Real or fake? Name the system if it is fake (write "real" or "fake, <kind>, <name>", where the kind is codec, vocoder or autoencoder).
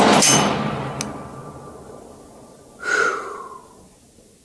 real